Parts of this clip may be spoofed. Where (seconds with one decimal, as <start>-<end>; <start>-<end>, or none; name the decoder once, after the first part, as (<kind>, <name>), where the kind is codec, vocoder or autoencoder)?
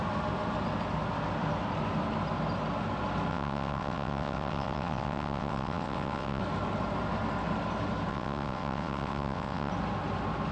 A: 3.3-6.4 (vocoder, WaveNeXt); 8.1-9.7